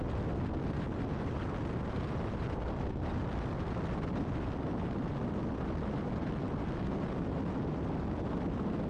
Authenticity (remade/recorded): recorded